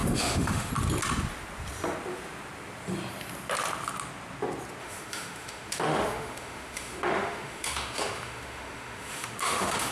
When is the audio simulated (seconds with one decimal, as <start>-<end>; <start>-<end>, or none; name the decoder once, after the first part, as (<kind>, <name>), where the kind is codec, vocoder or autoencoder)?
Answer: 0.0-0.7 (autoencoder, DAC-VAE); 4.8-9.9